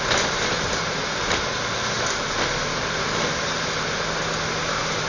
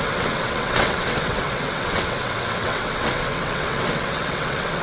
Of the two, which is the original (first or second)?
first